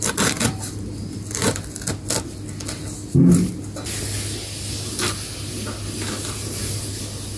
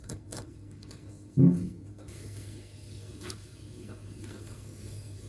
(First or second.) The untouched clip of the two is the first